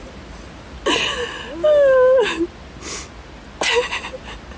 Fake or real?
real